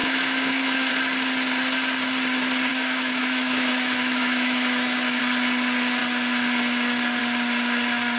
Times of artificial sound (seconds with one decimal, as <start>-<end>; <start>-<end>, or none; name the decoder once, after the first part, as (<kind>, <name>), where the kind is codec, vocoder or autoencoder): 0.0-0.9 (autoencoder, DAC-VAE); 2.7-5.2